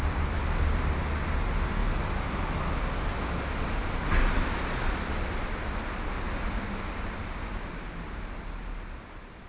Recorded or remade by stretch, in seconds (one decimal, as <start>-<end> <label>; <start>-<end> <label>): 0.0-9.5 recorded